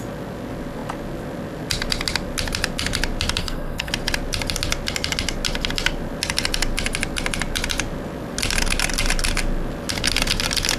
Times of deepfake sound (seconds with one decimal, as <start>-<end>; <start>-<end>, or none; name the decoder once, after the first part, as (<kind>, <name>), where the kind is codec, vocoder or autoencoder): 3.4-3.9 (codec, SNAC)

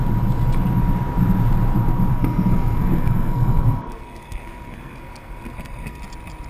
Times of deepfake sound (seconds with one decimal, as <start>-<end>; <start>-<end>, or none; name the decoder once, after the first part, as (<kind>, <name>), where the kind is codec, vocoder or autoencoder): 2.1-6.0 (codec, SNAC)

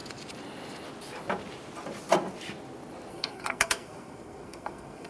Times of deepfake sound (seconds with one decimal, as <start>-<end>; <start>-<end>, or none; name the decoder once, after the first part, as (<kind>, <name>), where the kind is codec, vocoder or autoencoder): 3.1-5.1 (codec, SNAC)

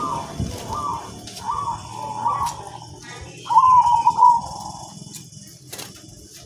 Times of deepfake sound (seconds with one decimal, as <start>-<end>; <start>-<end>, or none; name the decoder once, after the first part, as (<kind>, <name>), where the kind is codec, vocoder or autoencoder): none

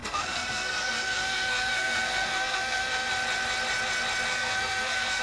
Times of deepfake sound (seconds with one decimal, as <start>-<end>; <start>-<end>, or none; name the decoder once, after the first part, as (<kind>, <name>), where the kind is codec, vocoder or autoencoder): 0.0-3.1 (codec, SNAC); 4.3-5.2

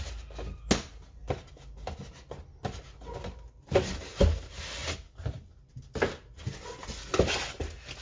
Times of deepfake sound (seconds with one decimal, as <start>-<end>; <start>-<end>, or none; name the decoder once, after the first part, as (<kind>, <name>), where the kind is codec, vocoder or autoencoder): none

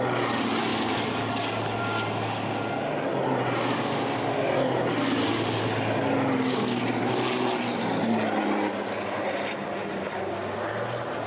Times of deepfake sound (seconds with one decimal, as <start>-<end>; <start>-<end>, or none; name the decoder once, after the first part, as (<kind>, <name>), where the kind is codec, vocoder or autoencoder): none